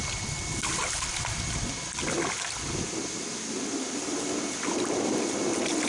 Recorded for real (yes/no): yes